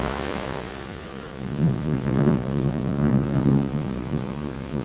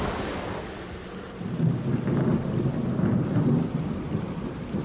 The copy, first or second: first